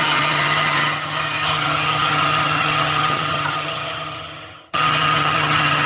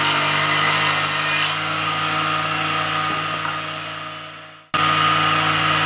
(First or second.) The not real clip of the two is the first